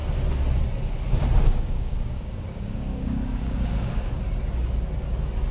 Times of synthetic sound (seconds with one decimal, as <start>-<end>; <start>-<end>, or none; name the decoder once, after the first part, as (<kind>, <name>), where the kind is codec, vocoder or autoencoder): 1.4-4.2 (codec, DAC)